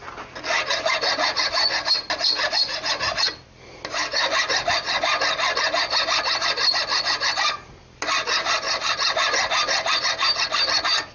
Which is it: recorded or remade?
recorded